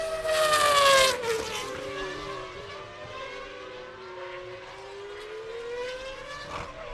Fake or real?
real